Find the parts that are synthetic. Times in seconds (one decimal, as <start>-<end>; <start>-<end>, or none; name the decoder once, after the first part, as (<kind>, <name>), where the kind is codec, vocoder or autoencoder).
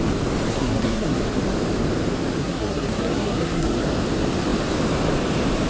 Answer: 0.5-1.2 (codec, SNAC); 2.4-3.8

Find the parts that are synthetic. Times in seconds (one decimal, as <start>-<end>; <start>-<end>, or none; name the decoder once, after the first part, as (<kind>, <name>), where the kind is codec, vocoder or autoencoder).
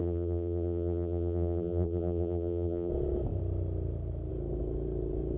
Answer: 0.0-2.9 (vocoder, BigVGAN v2)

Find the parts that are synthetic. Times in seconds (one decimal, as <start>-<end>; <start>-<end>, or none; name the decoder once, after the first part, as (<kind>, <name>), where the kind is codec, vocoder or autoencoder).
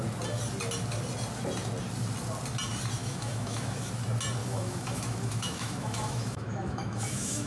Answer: 3.0-3.9 (autoencoder, DAC-VAE); 4.4-7.5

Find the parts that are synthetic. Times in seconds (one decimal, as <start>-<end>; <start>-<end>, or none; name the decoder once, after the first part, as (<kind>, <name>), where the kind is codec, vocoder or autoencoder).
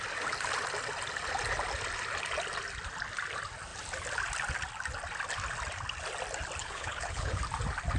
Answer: 6.6-7.4 (codec, HILCodec)